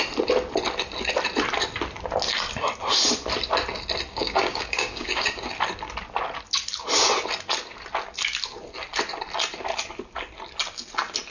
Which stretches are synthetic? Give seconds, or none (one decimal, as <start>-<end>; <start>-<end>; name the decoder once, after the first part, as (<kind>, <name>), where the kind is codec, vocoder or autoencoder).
4.1-5.5 (codec, DAC)

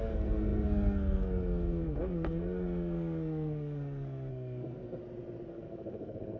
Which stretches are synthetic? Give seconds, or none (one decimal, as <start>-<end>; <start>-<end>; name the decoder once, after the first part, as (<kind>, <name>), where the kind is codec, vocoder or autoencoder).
0.0-5.0 (codec, SNAC); 5.5-6.4

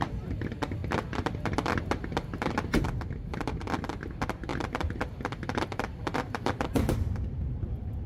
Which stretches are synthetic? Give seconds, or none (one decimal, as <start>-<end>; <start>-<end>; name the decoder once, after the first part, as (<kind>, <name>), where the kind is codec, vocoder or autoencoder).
4.5-8.1 (vocoder, BigVGAN v2)

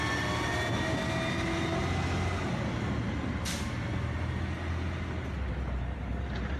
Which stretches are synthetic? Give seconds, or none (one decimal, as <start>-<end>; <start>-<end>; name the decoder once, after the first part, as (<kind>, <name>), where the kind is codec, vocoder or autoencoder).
none

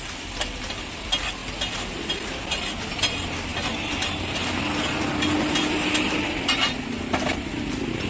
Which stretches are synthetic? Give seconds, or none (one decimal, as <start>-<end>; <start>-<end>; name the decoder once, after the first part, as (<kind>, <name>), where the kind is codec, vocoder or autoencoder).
none